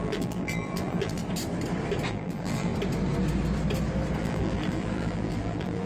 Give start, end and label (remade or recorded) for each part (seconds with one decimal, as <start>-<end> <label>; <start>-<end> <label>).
0.0-1.2 remade; 1.2-2.1 recorded; 2.1-2.7 remade; 2.7-4.2 recorded; 4.2-5.9 remade